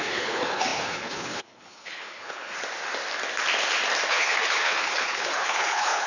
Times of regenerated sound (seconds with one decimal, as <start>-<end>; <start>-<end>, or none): 0.0-2.5; 4.1-6.1